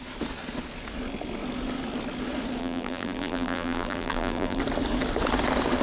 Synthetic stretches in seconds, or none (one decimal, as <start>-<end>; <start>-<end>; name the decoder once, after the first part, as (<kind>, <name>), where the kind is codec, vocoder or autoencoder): 2.6-4.6 (vocoder, BigVGAN v2)

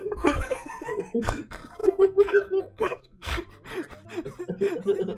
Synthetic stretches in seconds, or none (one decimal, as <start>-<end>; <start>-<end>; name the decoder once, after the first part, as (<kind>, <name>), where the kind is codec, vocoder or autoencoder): 0.0-3.3 (codec, SNAC)